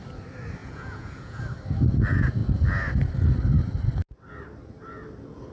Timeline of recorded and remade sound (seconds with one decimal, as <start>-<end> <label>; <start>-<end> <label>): 0.0-0.6 recorded; 0.6-1.4 remade; 1.4-5.5 recorded